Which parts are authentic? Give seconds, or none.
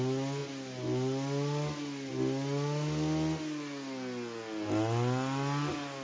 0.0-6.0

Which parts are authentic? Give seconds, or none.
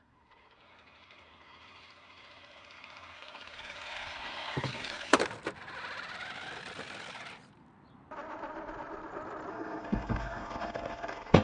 5.2-9.5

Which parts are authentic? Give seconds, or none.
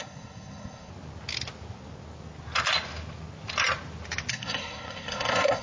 0.9-4.3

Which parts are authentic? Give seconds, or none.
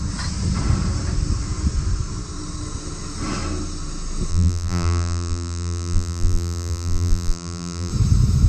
0.0-4.3; 7.9-8.5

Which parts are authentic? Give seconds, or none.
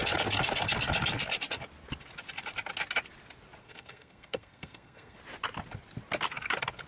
0.0-3.6; 5.2-6.9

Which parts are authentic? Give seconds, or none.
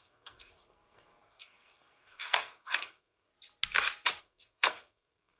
3.3-4.2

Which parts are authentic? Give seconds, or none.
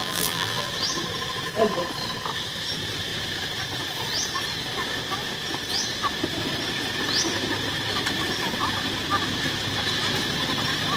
0.7-11.0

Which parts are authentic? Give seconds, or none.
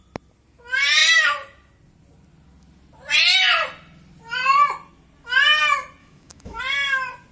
0.0-6.0; 6.6-7.3